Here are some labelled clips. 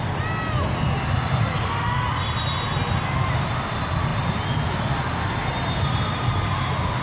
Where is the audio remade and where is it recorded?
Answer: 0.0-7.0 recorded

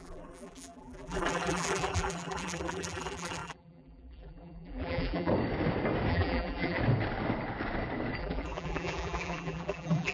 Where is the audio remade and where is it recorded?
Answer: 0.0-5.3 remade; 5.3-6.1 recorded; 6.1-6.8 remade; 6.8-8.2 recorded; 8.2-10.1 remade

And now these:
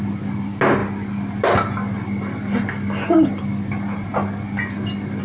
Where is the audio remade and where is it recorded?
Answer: 0.0-5.2 recorded

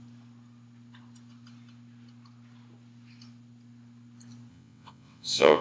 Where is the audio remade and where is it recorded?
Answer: 0.0-4.5 recorded; 4.5-5.6 remade

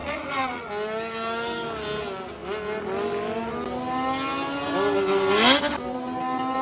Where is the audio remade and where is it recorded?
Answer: 0.0-0.7 remade; 0.7-6.6 recorded